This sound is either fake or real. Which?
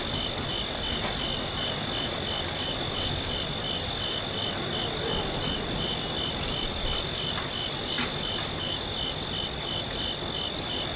real